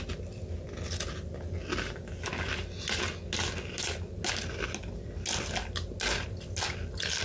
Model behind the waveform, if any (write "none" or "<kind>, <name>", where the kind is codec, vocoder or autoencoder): none